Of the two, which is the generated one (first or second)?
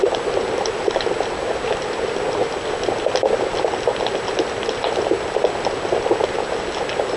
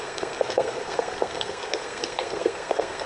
second